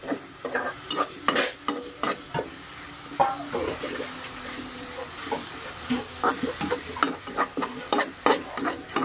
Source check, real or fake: real